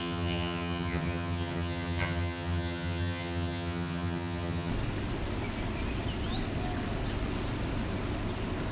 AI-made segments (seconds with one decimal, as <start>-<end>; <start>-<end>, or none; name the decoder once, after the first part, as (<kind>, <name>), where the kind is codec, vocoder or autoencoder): 0.0-4.7 (vocoder, HiFi-GAN)